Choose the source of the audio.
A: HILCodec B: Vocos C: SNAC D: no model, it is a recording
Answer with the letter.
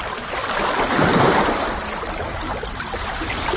D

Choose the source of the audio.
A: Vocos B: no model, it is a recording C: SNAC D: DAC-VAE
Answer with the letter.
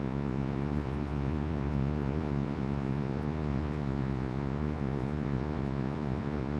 A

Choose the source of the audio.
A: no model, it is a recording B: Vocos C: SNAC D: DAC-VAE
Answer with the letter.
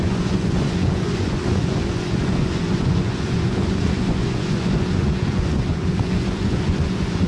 B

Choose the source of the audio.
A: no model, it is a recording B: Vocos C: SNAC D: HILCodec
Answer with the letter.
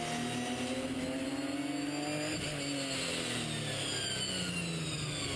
A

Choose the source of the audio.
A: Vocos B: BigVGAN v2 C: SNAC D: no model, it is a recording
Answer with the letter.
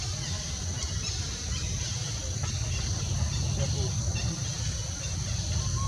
D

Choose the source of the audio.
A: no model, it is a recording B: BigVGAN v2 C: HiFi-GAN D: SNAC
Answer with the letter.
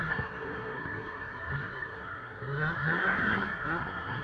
D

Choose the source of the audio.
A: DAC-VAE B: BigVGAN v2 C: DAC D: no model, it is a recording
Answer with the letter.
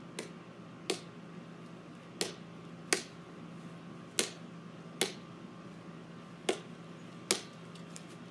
D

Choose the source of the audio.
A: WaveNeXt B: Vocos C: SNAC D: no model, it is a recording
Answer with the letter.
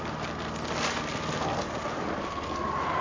D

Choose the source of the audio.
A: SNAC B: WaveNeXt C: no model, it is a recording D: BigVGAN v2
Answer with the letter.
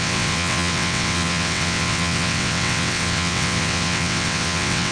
B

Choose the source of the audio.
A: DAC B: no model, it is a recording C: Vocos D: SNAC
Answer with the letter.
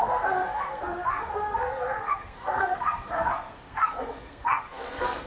D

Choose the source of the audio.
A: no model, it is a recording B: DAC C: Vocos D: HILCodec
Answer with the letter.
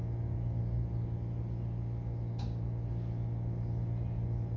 A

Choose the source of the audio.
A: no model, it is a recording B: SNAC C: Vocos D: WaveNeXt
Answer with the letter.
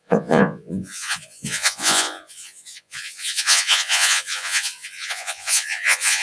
C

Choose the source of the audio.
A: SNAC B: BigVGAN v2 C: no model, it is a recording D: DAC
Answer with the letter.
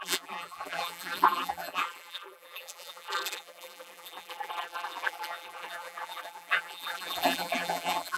B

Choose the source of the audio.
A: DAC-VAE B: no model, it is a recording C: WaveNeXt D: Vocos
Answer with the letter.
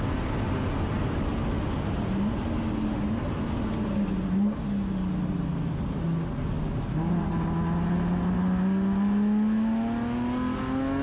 B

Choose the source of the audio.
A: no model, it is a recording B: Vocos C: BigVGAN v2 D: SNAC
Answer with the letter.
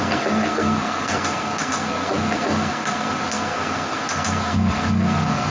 D